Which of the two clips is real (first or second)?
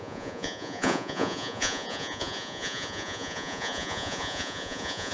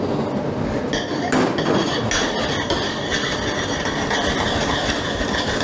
second